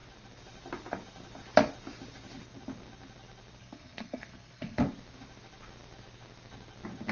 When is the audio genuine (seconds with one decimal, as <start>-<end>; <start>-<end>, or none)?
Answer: 0.0-3.6; 4.8-7.1